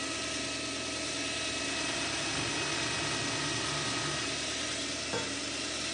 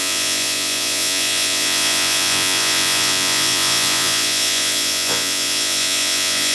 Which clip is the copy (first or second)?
second